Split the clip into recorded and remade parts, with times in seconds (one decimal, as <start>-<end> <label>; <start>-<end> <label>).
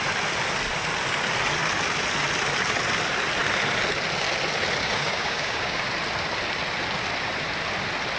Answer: 0.0-4.8 recorded; 4.8-5.8 remade; 5.8-8.2 recorded